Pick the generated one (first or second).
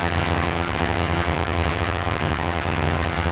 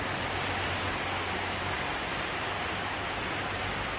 first